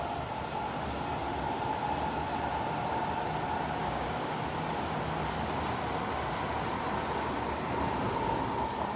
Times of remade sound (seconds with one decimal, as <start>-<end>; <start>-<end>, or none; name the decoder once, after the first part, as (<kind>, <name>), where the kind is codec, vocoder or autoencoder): 3.8-4.4 (codec, DAC)